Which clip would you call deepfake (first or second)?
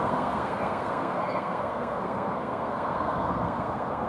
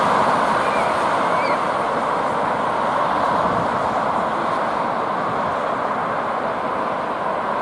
first